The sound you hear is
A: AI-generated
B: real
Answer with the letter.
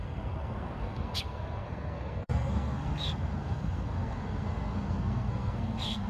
A